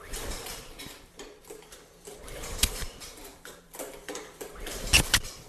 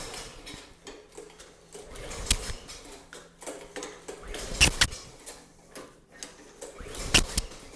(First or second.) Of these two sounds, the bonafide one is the second